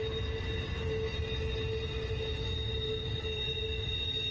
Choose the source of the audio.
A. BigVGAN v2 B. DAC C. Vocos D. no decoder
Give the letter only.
D